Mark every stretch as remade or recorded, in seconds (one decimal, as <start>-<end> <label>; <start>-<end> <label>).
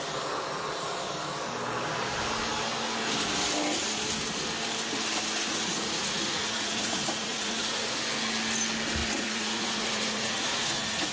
0.0-5.4 recorded; 5.4-8.0 remade; 8.0-9.0 recorded; 9.0-11.1 remade